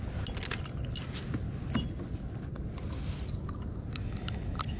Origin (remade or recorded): recorded